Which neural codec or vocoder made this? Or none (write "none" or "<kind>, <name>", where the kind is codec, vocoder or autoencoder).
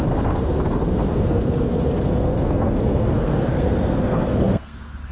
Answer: codec, SNAC